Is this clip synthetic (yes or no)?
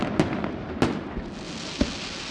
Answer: no